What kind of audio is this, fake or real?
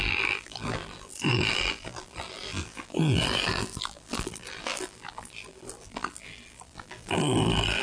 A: fake